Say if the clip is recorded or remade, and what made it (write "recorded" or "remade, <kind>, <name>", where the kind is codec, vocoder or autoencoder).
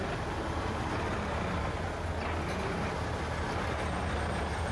recorded